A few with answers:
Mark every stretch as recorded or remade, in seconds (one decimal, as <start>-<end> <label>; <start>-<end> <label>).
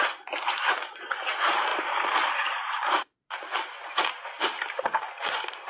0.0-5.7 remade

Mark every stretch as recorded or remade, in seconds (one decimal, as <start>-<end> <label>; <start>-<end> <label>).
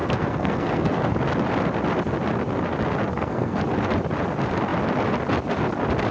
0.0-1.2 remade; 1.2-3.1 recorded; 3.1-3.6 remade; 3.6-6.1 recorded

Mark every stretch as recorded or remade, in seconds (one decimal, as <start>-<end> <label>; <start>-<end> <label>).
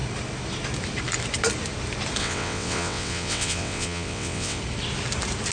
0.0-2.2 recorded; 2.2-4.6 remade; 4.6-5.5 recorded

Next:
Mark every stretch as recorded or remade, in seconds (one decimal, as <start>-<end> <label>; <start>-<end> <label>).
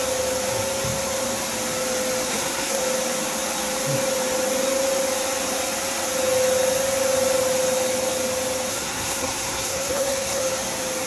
0.0-2.3 recorded; 2.3-2.8 remade; 2.8-8.7 recorded; 8.7-10.4 remade; 10.4-11.1 recorded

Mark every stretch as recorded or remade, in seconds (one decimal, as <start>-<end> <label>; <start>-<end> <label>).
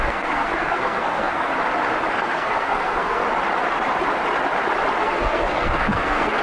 0.0-1.5 remade; 1.5-2.1 recorded; 2.1-3.2 remade; 3.2-5.0 recorded; 5.0-6.4 remade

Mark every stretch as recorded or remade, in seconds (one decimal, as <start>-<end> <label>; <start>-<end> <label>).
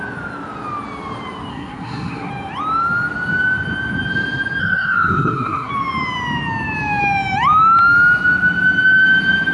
0.0-1.5 recorded; 1.5-2.3 remade; 2.3-4.6 recorded; 4.6-5.7 remade; 5.7-9.5 recorded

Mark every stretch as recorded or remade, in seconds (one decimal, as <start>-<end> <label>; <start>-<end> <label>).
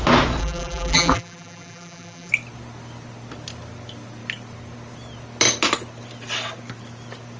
0.0-0.4 recorded; 0.4-2.3 remade; 2.3-7.4 recorded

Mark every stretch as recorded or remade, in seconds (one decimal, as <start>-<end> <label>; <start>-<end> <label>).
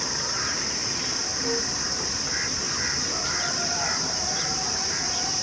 0.0-0.8 remade; 0.8-4.0 recorded; 4.0-5.4 remade